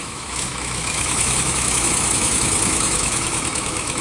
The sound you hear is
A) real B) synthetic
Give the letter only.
B